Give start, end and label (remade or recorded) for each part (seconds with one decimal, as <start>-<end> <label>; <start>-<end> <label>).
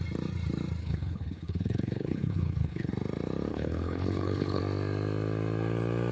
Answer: 0.0-0.8 recorded; 0.8-2.9 remade; 2.9-3.5 recorded; 3.5-4.6 remade; 4.6-6.1 recorded